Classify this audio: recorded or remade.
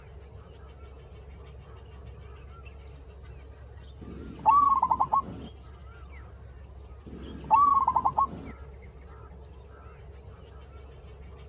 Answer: recorded